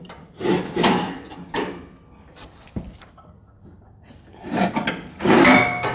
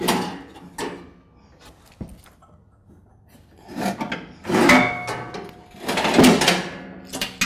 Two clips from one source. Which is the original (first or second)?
second